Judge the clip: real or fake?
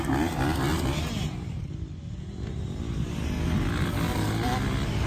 real